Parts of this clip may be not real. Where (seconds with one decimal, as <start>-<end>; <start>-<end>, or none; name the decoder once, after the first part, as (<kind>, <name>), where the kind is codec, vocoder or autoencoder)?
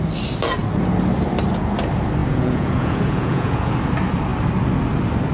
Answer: 2.2-3.7 (vocoder, Vocos)